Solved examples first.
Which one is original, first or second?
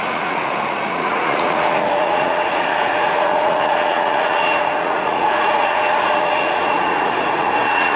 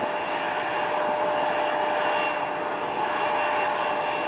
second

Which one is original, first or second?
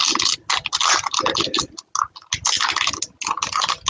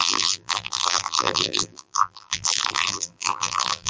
first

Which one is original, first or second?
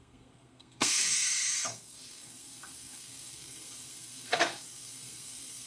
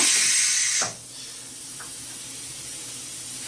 second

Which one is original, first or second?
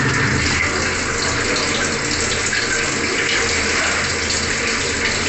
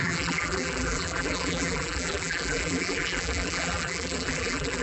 first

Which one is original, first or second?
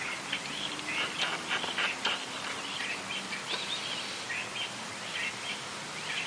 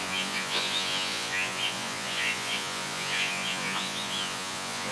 first